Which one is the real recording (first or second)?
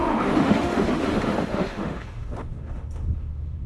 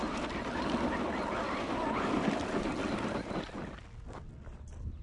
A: second